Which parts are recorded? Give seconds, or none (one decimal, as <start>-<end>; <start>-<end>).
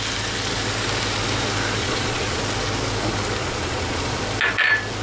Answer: 0.0-1.8; 2.4-3.4; 4.2-5.0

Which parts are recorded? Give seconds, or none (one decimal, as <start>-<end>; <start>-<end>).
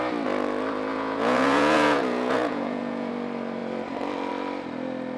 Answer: 0.0-0.9; 3.1-5.2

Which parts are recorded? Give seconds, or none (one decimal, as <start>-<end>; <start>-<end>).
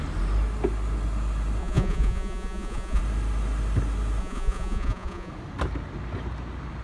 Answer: 0.0-1.6; 3.0-4.2; 5.3-6.8